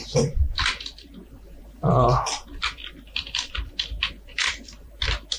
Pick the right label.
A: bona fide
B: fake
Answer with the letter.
B